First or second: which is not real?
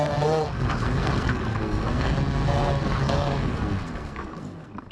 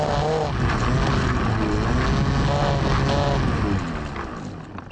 first